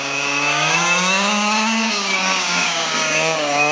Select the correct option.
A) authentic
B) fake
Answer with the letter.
B